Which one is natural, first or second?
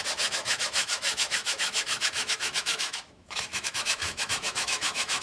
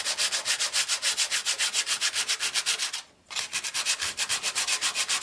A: second